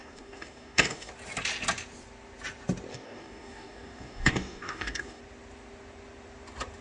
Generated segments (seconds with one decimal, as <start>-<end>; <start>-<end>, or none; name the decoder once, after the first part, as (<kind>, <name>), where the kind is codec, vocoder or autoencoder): 0.0-1.1 (codec, DAC); 2.9-5.2